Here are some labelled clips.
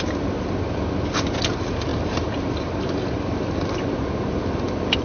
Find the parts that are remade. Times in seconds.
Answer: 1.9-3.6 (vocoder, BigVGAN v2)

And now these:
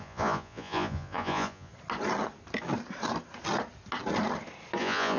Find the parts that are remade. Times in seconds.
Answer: 0.0-1.7 (vocoder, Vocos); 4.8-5.2